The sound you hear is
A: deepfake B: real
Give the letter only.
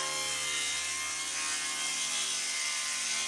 B